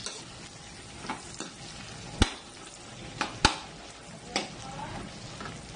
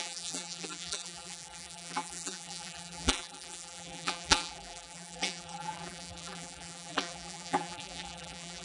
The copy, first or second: second